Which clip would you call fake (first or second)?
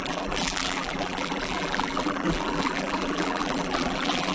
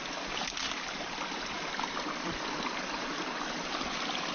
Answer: first